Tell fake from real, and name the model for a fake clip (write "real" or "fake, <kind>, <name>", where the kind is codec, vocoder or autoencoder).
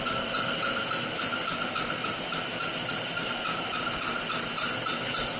real